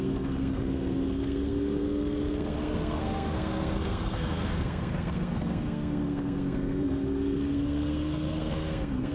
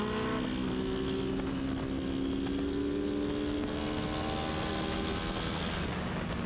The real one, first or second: second